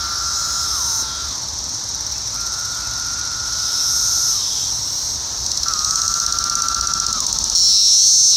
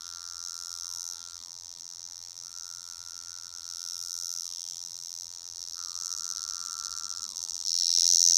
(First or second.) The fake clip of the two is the second